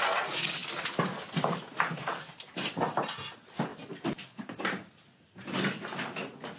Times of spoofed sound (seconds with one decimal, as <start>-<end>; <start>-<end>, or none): 3.7-5.0